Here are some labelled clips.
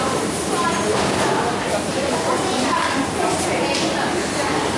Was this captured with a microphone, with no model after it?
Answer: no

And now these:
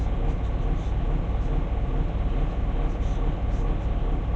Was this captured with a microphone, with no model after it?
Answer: yes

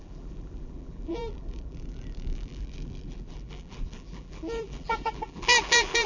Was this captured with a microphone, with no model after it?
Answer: no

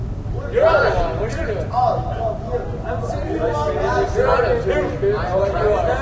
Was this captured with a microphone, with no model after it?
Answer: yes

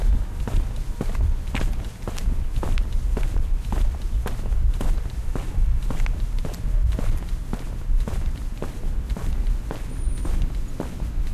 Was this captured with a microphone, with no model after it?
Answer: yes